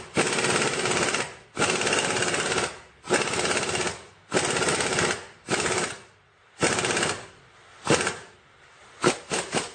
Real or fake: real